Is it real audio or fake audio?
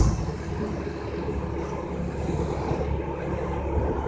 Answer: real